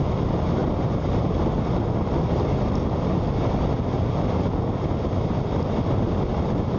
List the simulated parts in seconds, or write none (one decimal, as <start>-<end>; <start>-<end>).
none